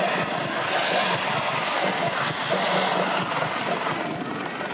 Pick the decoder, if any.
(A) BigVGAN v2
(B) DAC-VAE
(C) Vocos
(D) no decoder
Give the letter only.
D